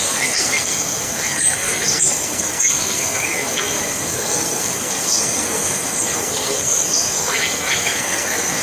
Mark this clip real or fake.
fake